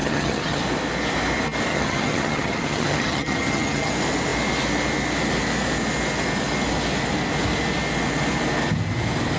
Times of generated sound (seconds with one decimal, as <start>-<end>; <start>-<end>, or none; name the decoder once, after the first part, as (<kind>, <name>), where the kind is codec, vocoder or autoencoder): 0.0-0.6 (vocoder, HiFi-GAN); 1.7-3.9